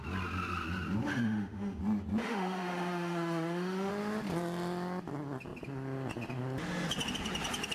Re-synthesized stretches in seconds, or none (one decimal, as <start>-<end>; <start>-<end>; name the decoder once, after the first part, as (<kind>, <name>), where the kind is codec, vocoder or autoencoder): 1.1-1.8 (autoencoder, DAC-VAE); 2.2-3.9